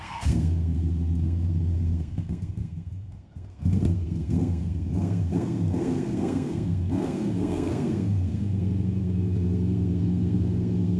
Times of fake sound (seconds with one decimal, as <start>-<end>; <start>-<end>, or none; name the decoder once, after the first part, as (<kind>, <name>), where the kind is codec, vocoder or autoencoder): 0.0-11.0 (codec, SNAC)